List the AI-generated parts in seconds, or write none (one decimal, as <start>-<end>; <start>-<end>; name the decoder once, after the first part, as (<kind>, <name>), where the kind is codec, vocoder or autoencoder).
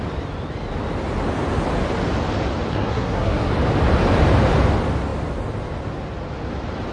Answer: 2.7-3.5 (codec, SNAC)